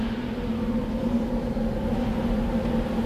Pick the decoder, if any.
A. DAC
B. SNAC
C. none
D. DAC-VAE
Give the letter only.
C